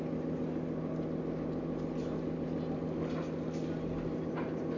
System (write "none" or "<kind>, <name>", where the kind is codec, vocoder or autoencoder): none